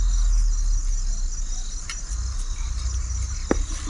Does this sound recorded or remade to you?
recorded